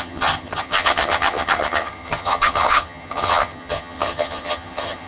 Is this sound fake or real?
fake